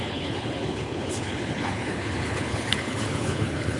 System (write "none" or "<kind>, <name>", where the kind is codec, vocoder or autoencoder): codec, HILCodec